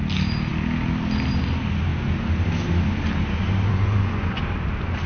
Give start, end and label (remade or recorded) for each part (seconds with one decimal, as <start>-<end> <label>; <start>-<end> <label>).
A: 0.0-3.7 recorded; 3.7-4.4 remade; 4.4-5.1 recorded